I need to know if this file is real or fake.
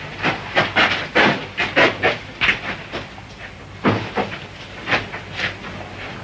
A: real